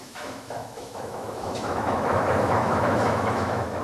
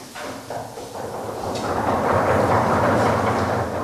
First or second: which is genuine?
second